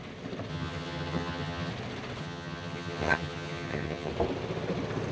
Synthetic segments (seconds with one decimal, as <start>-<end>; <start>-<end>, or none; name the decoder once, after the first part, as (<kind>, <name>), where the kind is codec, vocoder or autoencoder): 0.5-1.7 (vocoder, HiFi-GAN); 2.2-4.1